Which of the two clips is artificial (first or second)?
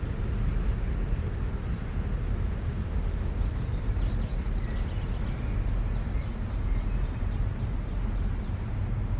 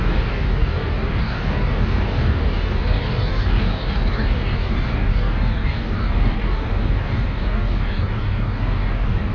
second